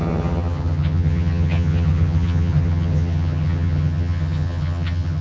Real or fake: fake